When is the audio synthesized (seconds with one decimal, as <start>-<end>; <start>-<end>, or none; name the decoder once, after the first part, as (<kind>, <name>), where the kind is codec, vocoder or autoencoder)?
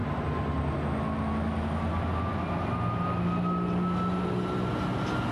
none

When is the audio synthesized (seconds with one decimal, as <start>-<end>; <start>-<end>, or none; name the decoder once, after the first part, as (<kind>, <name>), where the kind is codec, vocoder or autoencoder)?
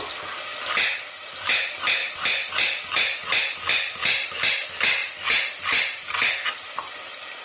none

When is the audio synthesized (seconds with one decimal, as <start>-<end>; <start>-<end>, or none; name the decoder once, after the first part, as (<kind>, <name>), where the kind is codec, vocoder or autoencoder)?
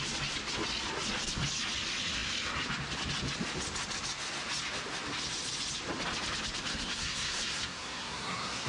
6.7-8.7 (codec, SNAC)